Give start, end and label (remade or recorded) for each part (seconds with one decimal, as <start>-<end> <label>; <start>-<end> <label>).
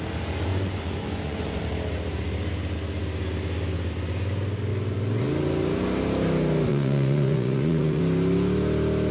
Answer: 0.0-0.5 recorded; 0.5-1.6 remade; 1.6-6.7 recorded; 6.7-8.0 remade; 8.0-9.1 recorded